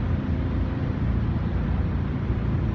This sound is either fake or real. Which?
real